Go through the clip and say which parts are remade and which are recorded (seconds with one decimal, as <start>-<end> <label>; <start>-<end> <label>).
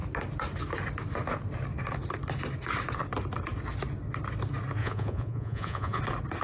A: 0.0-4.8 recorded; 4.8-6.0 remade; 6.0-6.4 recorded